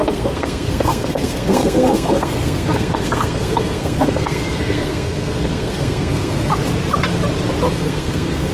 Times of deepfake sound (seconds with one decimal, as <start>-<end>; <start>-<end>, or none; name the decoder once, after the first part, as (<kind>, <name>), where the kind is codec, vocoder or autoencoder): 0.0-6.5 (codec, SNAC); 7.7-8.5